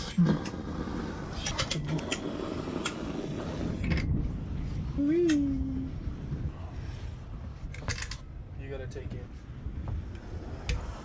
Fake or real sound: real